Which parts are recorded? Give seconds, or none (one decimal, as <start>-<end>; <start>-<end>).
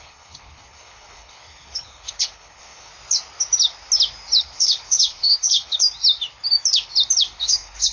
2.9-4.4; 5.8-7.4